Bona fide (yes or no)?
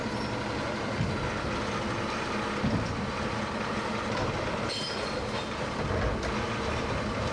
yes